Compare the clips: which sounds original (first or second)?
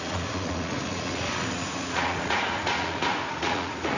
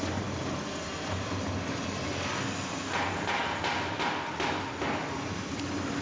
second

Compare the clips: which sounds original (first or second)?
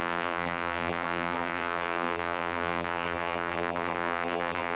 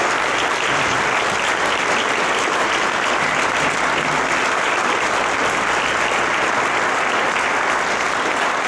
second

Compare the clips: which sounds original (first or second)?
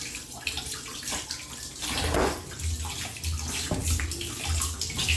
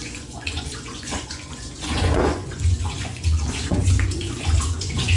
first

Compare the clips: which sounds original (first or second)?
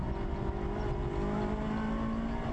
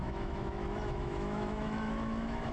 first